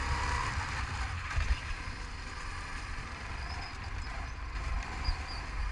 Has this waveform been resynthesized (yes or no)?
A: no